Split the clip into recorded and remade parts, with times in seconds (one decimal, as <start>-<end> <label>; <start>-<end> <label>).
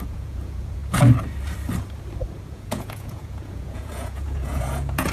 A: 0.0-0.8 remade; 0.8-2.5 recorded; 2.5-5.1 remade